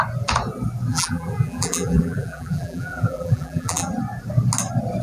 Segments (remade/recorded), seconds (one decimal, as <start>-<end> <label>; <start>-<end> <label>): 0.0-0.9 recorded; 0.9-3.9 remade; 3.9-5.0 recorded